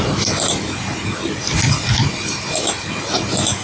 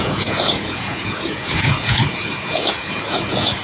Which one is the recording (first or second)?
first